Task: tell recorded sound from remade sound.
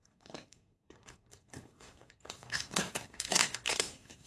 remade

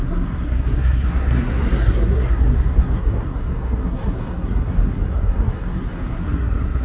remade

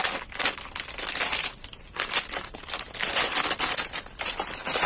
recorded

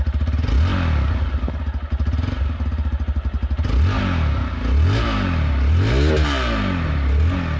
recorded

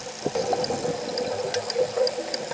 recorded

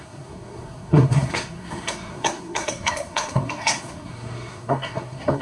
remade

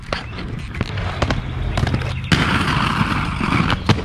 recorded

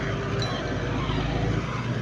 recorded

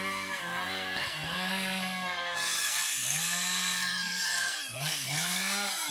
remade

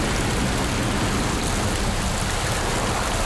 recorded